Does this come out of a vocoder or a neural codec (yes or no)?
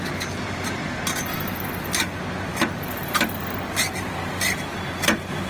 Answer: no